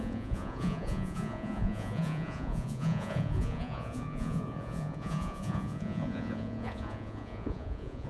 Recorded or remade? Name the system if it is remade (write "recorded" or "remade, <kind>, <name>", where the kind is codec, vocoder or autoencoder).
remade, vocoder, Vocos